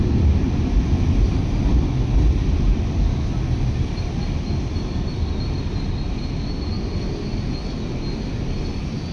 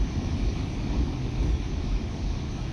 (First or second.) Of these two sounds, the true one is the first